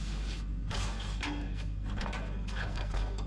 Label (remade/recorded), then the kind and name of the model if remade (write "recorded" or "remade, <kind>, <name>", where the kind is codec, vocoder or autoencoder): remade, codec, SNAC